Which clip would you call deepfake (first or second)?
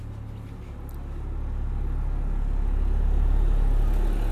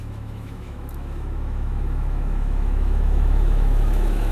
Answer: second